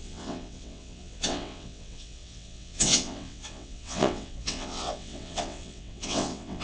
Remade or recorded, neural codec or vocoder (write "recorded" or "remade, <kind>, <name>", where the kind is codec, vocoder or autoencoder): remade, vocoder, WaveNeXt